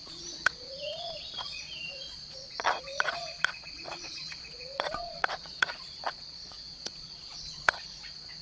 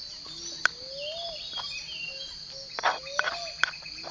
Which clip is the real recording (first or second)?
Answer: second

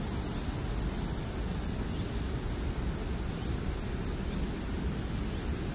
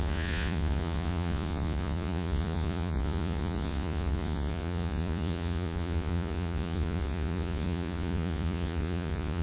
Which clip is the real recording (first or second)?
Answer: first